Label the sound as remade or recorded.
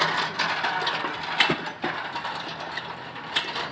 recorded